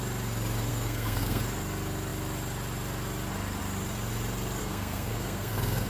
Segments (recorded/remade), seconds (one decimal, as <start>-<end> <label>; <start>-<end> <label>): 0.0-0.7 recorded; 0.7-1.4 remade; 1.4-4.6 recorded; 4.6-5.9 remade